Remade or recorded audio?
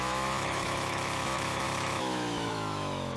remade